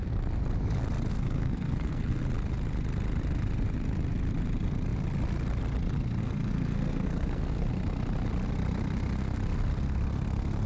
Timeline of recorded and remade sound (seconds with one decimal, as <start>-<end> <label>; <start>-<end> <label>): 0.0-1.1 recorded; 1.1-2.2 remade; 2.2-6.2 recorded; 6.2-7.7 remade; 7.7-10.7 recorded